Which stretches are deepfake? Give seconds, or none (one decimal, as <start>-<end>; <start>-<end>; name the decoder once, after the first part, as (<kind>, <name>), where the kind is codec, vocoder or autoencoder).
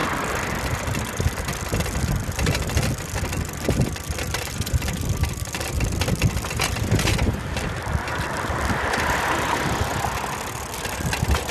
1.0-9.9 (vocoder, BigVGAN v2)